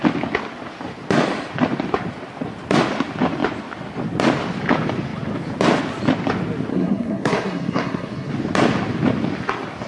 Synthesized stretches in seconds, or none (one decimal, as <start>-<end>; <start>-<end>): 6.7-8.3